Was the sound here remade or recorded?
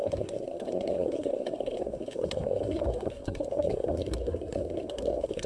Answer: remade